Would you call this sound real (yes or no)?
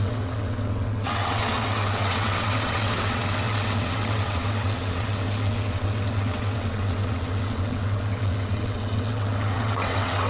no